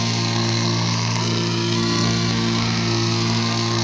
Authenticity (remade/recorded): remade